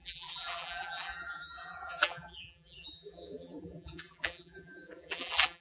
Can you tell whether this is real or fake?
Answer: fake